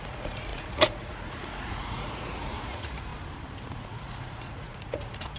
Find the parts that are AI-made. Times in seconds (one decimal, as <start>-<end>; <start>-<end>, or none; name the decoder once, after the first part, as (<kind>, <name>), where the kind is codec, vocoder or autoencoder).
0.0-3.1 (vocoder, Vocos); 3.6-5.4